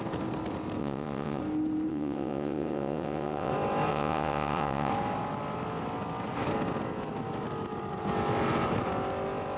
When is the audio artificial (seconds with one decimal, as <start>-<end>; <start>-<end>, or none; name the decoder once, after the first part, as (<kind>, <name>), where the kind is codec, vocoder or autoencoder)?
0.8-1.4 (vocoder, WaveNeXt); 1.9-3.5; 3.9-4.9